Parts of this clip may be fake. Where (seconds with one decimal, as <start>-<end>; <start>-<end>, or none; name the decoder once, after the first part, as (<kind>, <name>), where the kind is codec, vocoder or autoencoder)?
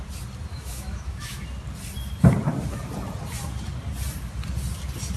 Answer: 0.5-1.4 (autoencoder, DAC-VAE)